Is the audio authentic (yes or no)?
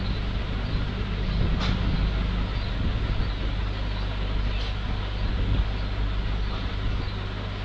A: yes